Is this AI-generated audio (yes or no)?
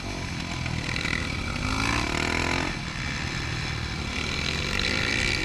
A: no